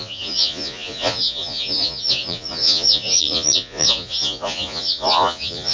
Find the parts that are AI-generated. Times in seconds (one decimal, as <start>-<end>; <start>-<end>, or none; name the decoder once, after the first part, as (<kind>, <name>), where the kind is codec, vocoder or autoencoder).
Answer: 0.0-5.7 (vocoder, Vocos)